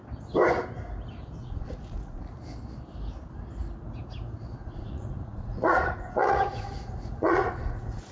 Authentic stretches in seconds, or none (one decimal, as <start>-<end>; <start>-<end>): 0.0-1.4; 2.2-4.6